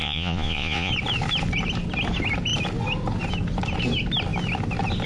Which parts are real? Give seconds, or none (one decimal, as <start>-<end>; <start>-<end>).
0.9-5.1